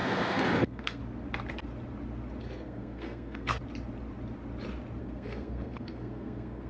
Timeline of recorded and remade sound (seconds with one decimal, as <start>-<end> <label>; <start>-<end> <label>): 0.0-1.0 remade; 1.0-2.4 recorded; 2.4-3.6 remade; 3.6-5.0 recorded; 5.0-6.7 remade